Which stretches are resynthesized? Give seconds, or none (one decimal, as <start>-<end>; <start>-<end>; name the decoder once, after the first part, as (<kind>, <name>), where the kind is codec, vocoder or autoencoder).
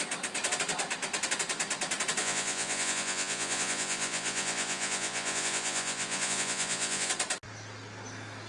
2.2-7.1 (vocoder, Vocos)